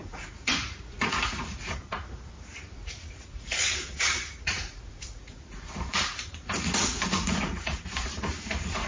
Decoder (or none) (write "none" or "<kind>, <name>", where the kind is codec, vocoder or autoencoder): vocoder, Vocos